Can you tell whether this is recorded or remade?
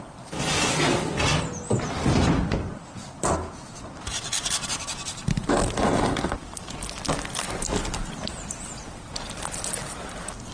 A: remade